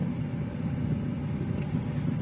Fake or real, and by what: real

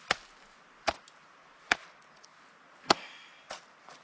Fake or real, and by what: real